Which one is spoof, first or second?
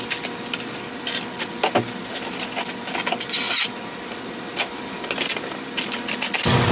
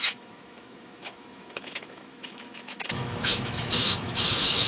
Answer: second